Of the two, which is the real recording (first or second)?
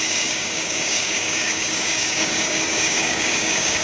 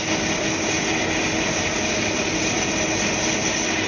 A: second